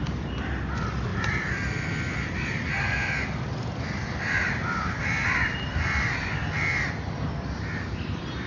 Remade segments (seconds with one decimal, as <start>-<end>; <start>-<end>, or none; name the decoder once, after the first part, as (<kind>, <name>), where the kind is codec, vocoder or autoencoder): 0.0-6.4 (vocoder, BigVGAN v2); 7.2-8.5